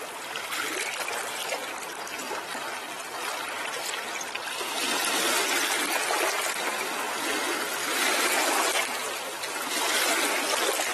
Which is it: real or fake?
real